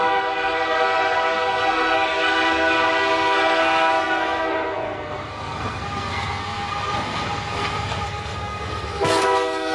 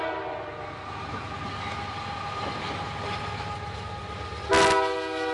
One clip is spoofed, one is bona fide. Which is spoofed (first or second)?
first